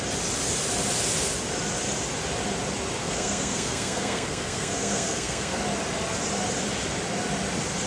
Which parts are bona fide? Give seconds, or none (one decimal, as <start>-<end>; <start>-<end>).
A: 0.0-3.0; 5.6-7.9